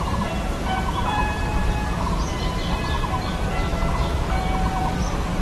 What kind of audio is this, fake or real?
fake